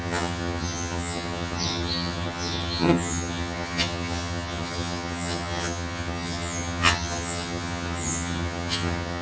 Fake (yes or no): yes